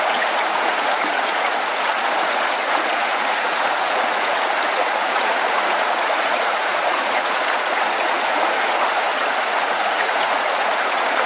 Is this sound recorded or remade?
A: remade